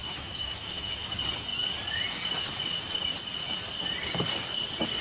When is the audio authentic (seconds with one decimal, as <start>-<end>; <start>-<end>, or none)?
0.9-5.0